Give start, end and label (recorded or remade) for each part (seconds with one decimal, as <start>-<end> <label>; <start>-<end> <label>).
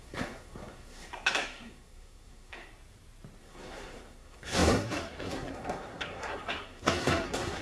0.0-2.7 remade; 2.7-3.4 recorded; 3.4-7.6 remade